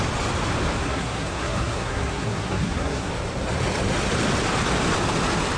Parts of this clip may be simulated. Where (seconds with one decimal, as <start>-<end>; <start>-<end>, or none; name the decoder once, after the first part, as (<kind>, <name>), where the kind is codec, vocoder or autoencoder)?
0.8-3.1 (codec, SNAC)